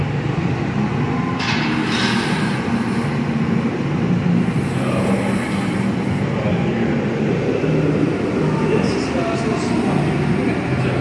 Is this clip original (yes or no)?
yes